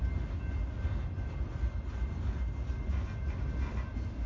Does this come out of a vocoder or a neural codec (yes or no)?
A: no